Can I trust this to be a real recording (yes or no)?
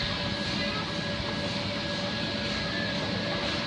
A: yes